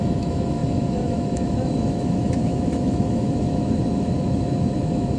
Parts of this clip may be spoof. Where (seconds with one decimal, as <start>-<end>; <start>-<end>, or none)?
0.0-5.2